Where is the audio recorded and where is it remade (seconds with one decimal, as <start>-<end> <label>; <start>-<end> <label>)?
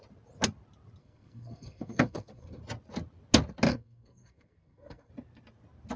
0.0-1.0 recorded; 1.0-2.6 remade; 2.6-3.7 recorded; 3.7-5.1 remade; 5.1-6.0 recorded